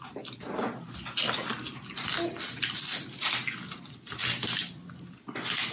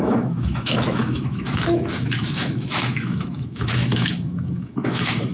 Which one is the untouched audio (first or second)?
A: first